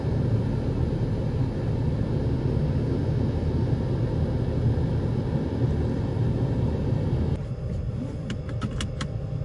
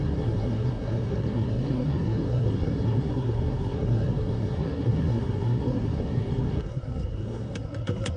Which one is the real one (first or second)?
first